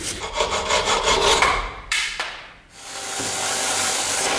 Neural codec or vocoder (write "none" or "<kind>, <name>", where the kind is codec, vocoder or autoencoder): vocoder, BigVGAN v2